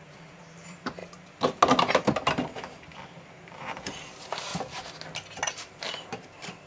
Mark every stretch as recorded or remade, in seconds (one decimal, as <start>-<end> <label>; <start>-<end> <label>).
0.0-1.0 remade; 1.0-3.4 recorded; 3.4-4.5 remade; 4.5-5.5 recorded; 5.5-6.7 remade